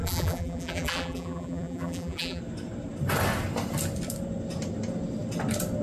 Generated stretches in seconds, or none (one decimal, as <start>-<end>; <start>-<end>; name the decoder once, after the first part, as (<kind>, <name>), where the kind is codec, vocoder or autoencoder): 0.0-2.4 (vocoder, BigVGAN v2)